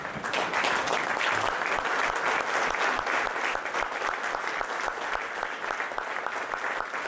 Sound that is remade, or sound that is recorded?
recorded